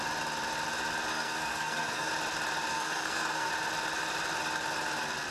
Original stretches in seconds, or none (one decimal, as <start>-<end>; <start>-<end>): 0.0-1.1; 2.1-2.7; 3.5-5.3